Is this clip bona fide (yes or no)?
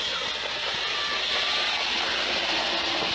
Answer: yes